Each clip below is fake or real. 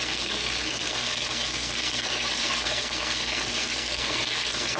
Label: fake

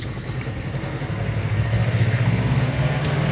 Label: fake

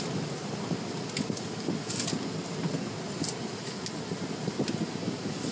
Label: real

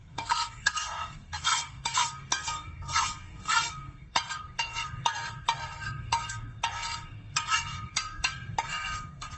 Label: fake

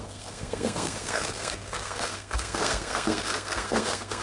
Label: fake